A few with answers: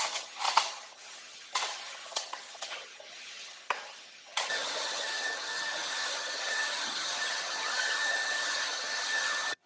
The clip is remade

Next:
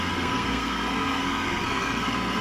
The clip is remade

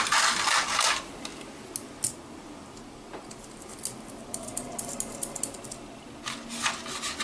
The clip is recorded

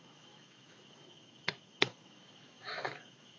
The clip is remade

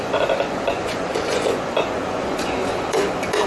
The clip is remade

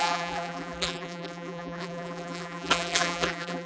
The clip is remade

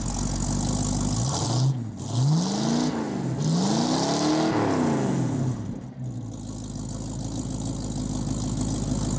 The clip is recorded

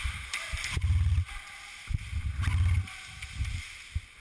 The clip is recorded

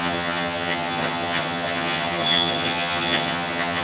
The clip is remade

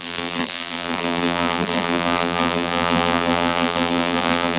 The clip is remade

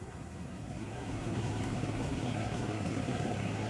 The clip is remade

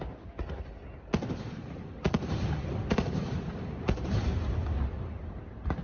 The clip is recorded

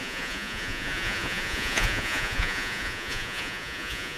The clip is remade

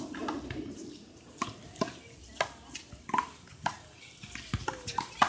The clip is recorded